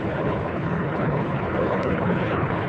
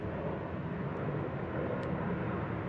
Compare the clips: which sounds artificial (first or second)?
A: first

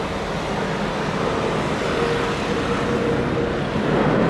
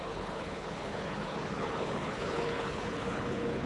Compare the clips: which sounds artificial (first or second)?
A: second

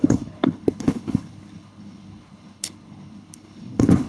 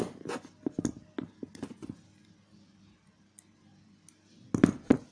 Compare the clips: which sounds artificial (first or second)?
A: first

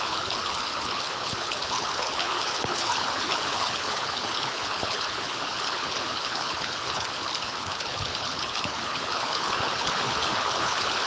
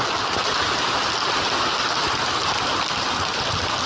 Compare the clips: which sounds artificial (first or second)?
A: first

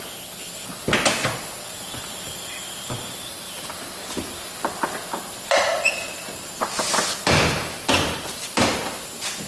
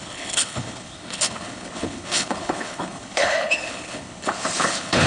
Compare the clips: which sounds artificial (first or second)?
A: second